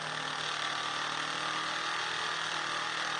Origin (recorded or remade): recorded